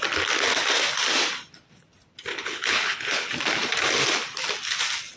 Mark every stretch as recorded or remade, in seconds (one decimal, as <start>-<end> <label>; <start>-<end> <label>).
0.0-2.3 recorded; 2.3-3.3 remade; 3.3-5.2 recorded